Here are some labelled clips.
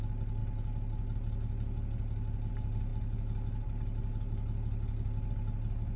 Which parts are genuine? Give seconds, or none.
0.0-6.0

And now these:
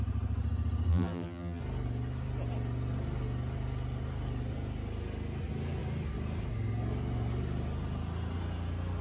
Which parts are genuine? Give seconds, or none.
0.0-0.9; 1.6-9.0

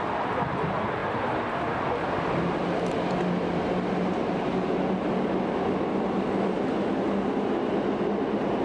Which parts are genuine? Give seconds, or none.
0.0-8.6